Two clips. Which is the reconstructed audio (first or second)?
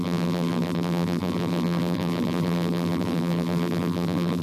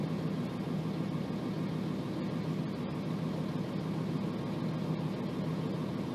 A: first